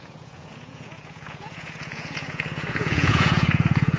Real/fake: fake